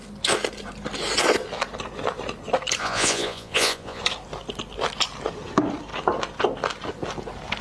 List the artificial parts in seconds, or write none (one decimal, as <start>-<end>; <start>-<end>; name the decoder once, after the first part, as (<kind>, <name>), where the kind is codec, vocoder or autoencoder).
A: 2.8-4.0 (vocoder, Vocos)

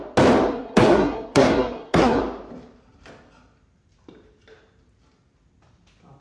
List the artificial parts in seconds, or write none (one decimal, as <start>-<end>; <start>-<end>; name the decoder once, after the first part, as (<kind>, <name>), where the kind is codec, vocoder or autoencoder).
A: 0.5-2.2 (codec, SNAC)

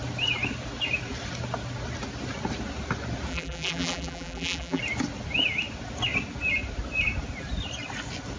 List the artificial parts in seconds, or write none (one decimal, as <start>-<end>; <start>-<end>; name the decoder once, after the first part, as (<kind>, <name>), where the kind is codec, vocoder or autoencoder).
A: 3.3-4.8 (vocoder, BigVGAN v2)

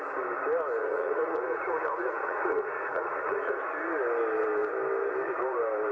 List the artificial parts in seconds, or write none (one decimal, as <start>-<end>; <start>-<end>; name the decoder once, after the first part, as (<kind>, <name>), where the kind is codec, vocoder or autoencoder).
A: 0.8-3.6 (vocoder, Vocos)